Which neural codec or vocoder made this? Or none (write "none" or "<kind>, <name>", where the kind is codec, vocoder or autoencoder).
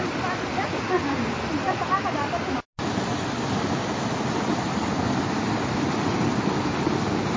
none